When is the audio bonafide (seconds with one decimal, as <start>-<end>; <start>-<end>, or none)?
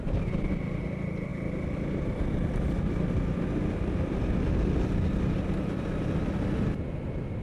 0.0-7.4